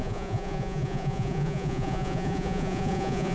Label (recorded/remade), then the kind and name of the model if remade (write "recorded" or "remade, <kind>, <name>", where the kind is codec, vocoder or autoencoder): remade, vocoder, Vocos